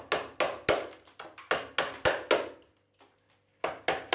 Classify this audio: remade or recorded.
recorded